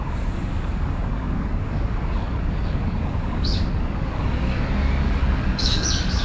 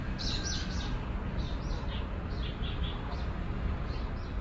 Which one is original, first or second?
second